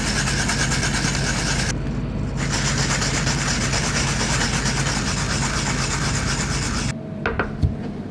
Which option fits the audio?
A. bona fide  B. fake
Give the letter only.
A